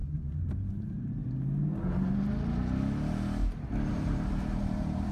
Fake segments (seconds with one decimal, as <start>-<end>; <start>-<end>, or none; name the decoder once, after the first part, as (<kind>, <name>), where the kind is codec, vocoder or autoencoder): 0.0-1.2 (vocoder, BigVGAN v2); 3.9-5.1